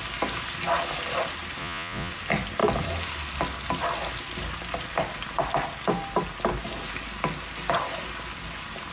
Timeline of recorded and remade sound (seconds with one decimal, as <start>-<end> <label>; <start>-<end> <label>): 0.0-1.6 recorded; 1.6-2.1 remade; 2.1-8.9 recorded